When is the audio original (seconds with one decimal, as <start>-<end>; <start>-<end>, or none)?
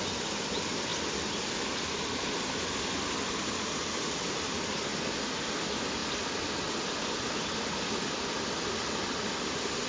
0.0-9.9